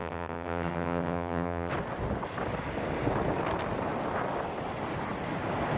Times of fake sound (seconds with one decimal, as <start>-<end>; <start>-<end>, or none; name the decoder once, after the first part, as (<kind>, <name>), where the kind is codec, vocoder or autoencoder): 0.0-1.7 (vocoder, HiFi-GAN)